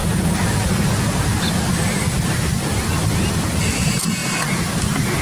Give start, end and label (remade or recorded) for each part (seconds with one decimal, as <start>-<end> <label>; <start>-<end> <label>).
0.0-5.2 recorded